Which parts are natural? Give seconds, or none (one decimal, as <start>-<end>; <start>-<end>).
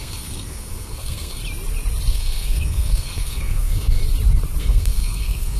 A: 1.4-2.1; 4.0-4.6